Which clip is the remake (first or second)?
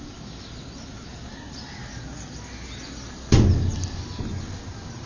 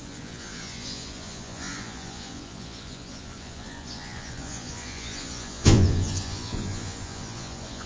second